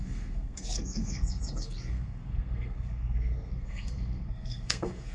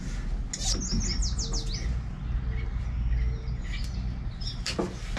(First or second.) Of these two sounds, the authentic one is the second